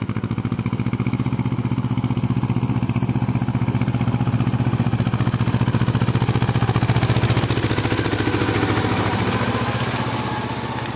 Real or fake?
real